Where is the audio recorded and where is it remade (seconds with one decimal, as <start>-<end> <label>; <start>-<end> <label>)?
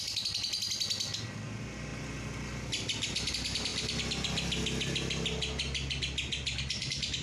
0.0-7.2 recorded